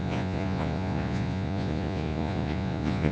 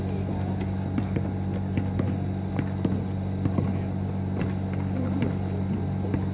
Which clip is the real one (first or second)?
second